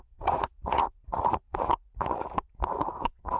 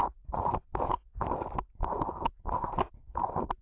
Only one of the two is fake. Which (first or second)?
first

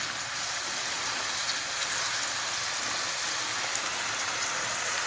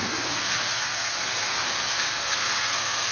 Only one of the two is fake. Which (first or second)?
second